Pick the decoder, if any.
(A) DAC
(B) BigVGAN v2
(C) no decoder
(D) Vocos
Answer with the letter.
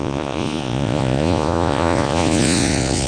D